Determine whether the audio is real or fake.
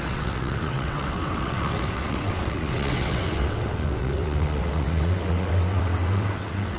fake